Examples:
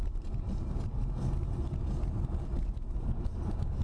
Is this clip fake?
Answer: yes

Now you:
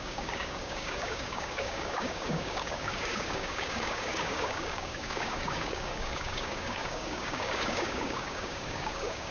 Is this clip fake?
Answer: yes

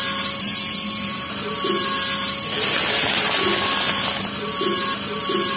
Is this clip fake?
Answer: no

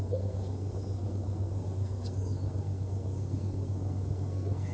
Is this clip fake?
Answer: yes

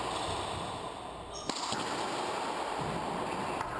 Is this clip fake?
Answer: no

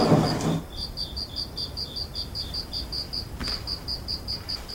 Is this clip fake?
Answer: no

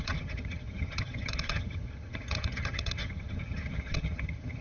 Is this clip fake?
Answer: yes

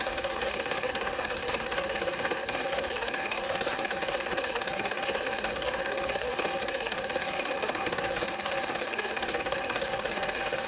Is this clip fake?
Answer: yes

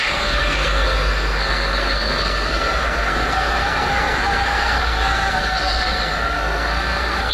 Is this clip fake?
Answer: yes